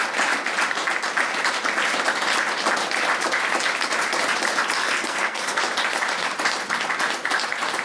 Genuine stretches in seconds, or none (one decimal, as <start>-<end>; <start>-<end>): 0.0-4.8; 5.6-7.8